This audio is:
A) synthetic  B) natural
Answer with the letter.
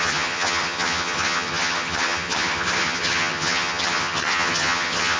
A